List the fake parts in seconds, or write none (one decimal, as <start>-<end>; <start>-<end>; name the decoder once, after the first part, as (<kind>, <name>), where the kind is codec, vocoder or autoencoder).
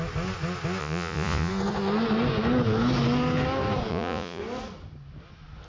0.8-1.5 (vocoder, Vocos); 3.9-4.4